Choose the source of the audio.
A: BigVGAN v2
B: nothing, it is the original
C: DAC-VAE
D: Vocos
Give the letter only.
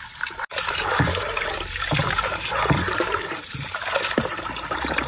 A